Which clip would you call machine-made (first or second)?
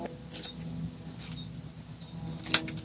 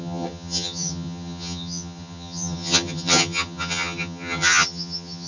second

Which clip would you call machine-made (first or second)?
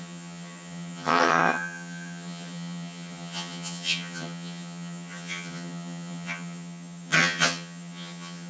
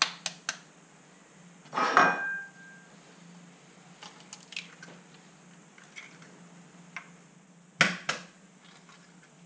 first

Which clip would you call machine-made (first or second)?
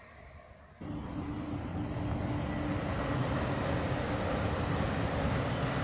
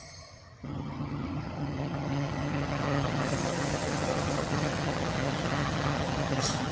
second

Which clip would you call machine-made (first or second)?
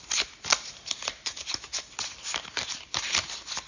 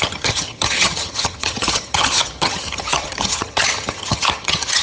second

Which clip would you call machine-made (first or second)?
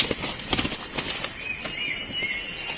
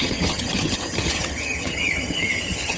second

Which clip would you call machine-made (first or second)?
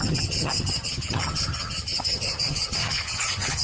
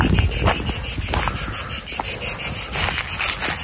first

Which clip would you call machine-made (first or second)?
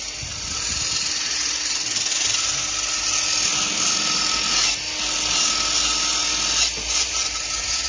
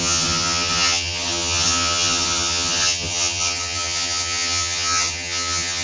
second